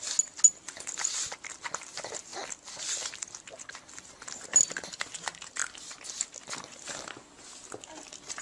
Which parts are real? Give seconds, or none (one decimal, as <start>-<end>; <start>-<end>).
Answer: 0.0-8.4